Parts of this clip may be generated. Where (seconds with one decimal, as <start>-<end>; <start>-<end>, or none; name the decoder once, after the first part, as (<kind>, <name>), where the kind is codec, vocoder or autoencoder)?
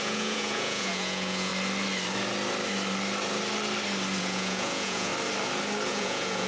0.0-1.5 (vocoder, Vocos); 4.2-5.1; 5.9-6.5